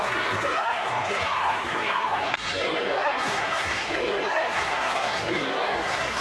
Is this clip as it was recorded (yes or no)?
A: no